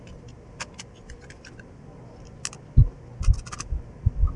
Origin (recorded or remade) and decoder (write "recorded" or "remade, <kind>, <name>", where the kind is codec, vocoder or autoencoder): recorded